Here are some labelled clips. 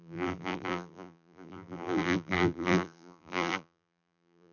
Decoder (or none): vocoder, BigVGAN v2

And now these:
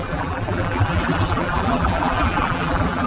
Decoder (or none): vocoder, BigVGAN v2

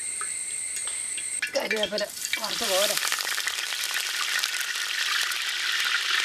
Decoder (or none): vocoder, BigVGAN v2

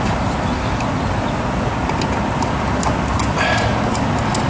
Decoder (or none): none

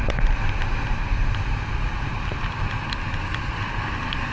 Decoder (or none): none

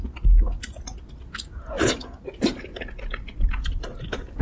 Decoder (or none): none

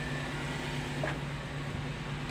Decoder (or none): none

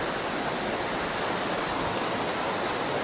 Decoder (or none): none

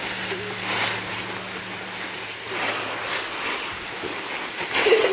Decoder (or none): vocoder, BigVGAN v2